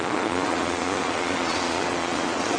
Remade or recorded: remade